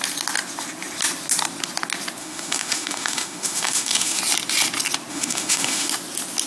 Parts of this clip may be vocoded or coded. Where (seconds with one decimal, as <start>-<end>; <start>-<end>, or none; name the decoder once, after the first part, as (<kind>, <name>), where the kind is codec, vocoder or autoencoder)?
2.2-4.2 (autoencoder, DAC-VAE); 5.1-5.9